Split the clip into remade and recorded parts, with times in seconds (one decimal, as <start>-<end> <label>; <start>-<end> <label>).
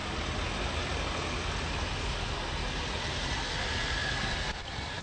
0.0-5.0 recorded